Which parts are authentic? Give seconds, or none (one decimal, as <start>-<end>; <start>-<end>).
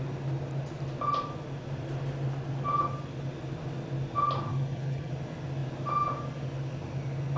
0.0-4.5; 5.1-7.4